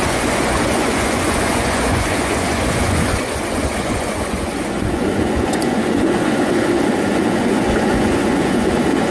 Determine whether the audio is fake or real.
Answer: fake